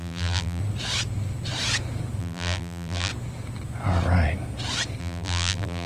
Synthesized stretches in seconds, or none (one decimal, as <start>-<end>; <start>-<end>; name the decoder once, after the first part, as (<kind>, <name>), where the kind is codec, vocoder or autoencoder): 0.0-0.6 (vocoder, BigVGAN v2); 2.2-3.1; 5.0-5.9